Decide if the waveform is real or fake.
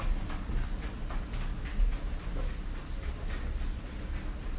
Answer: real